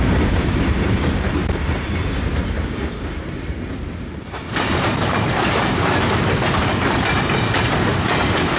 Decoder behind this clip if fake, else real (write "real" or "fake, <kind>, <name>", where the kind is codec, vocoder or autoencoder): fake, vocoder, BigVGAN v2